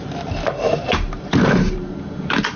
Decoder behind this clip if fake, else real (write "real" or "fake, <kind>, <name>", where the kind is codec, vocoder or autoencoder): fake, vocoder, BigVGAN v2